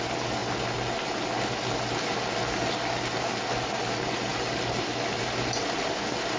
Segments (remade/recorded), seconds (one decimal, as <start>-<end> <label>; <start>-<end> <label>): 0.0-6.4 recorded